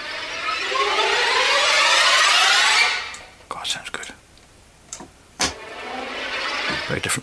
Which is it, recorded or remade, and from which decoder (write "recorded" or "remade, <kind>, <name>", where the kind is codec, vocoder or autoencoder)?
remade, vocoder, BigVGAN v2